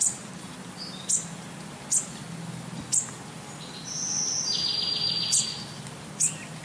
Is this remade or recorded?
recorded